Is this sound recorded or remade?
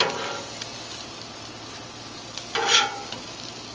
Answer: recorded